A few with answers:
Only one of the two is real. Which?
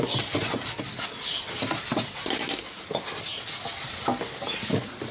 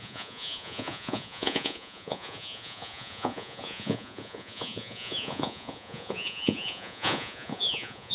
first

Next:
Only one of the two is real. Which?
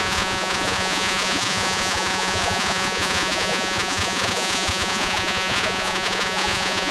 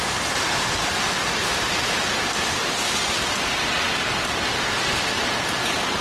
second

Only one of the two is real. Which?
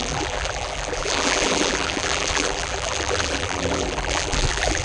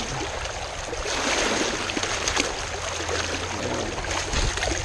second